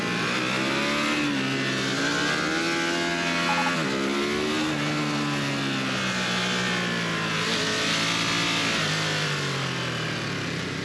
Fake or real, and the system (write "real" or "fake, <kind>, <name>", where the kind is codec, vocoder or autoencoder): real